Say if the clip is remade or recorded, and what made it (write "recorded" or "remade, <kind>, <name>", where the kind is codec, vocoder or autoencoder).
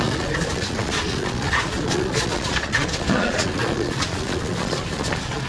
remade, vocoder, Vocos